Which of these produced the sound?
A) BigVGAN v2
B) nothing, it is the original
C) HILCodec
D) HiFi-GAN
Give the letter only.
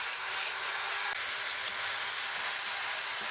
B